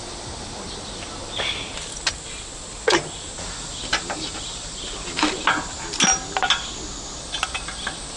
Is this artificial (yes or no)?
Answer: no